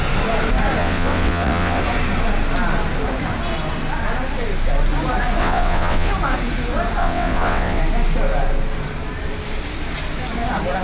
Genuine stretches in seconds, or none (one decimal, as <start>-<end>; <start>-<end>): 0.0-0.8; 1.8-5.4; 6.1-7.0; 7.8-10.8